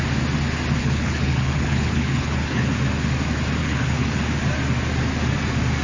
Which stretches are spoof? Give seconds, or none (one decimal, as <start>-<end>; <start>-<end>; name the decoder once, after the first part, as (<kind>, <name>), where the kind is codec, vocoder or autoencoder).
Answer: 0.8-2.7 (codec, HILCodec); 3.6-4.2